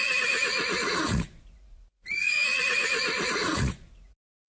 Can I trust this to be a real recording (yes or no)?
no